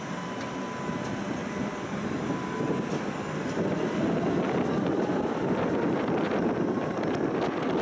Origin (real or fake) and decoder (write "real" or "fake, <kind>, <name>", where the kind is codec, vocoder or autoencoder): real